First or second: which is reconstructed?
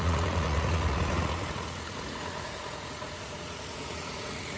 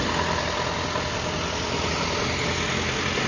first